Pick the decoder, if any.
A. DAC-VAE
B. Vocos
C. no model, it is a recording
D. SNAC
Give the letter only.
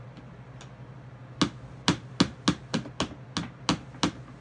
C